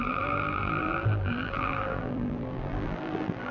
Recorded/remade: remade